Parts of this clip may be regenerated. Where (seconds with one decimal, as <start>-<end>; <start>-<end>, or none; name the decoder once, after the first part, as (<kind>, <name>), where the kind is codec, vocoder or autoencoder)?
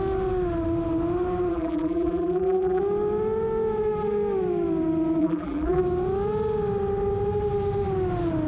1.5-2.8 (vocoder, BigVGAN v2); 5.2-5.8